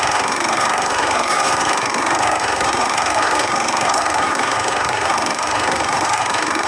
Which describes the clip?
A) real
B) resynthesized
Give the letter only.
B